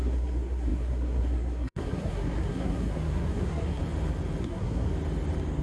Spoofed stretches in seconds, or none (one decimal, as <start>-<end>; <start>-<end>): 0.0-3.8; 4.4-4.9